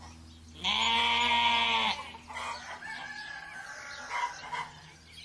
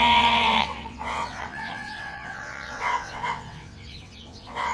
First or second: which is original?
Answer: first